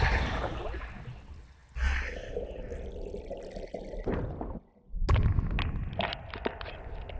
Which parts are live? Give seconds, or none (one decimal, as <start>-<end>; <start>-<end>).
0.0-7.2